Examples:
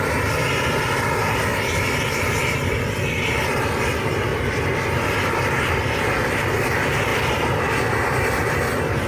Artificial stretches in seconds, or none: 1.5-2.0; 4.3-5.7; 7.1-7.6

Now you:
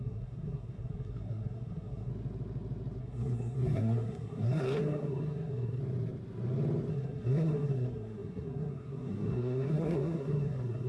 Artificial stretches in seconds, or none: 0.0-2.1; 3.0-5.8; 6.9-10.9

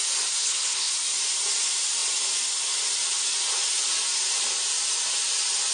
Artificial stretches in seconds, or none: 0.4-0.9